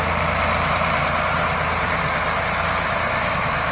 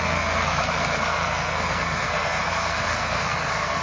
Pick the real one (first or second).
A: first